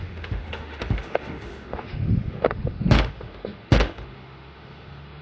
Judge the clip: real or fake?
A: fake